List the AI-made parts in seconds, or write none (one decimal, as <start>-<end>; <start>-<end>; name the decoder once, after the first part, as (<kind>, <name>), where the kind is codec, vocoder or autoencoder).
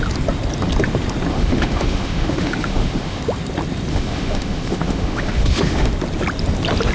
1.3-3.2 (autoencoder, DAC-VAE); 3.9-5.9